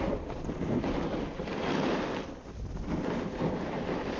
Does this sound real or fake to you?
real